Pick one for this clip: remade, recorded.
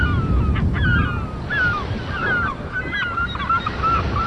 recorded